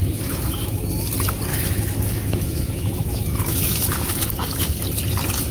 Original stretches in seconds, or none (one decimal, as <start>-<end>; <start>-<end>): 0.8-1.5; 4.8-5.5